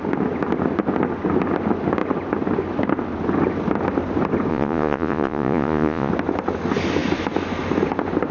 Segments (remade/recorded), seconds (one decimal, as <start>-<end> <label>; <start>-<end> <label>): 0.0-4.5 recorded; 4.5-6.1 remade; 6.1-8.3 recorded